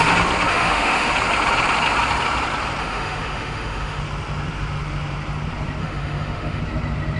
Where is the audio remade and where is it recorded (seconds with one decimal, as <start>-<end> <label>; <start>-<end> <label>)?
0.0-0.5 recorded; 0.5-1.1 remade; 1.1-2.8 recorded; 2.8-4.0 remade; 4.0-5.8 recorded; 5.8-6.6 remade; 6.6-7.2 recorded